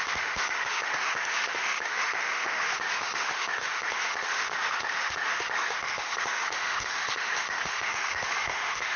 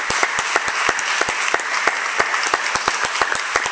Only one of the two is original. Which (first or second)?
second